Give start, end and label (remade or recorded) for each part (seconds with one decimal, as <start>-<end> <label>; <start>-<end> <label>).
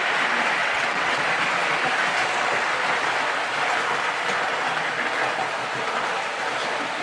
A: 0.0-0.6 recorded; 0.6-1.2 remade; 1.2-7.0 recorded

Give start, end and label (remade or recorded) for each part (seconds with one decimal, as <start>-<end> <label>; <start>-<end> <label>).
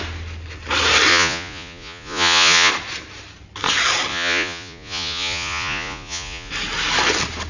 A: 0.0-1.1 recorded; 1.1-2.7 remade; 2.7-4.1 recorded; 4.1-6.5 remade; 6.5-7.5 recorded